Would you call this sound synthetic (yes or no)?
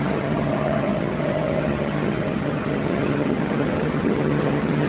yes